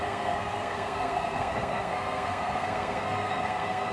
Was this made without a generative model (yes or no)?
no